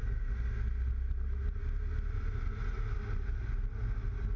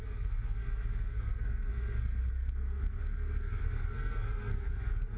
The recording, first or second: first